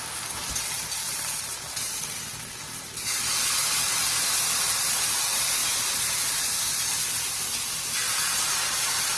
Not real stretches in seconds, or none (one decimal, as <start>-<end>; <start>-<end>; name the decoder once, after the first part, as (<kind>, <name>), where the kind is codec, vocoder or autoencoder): none